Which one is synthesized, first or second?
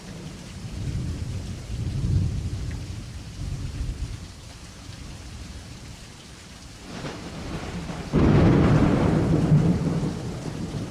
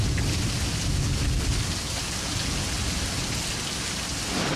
first